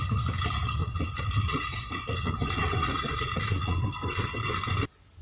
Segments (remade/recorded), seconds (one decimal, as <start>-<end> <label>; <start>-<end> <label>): 0.0-0.8 recorded; 0.8-3.9 remade; 3.9-5.2 recorded